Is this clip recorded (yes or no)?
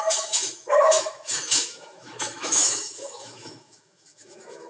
no